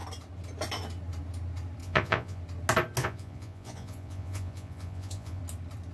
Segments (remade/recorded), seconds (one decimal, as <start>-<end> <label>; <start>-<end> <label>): 0.0-1.8 recorded; 1.8-2.4 remade; 2.4-3.0 recorded; 3.0-5.4 remade; 5.4-5.9 recorded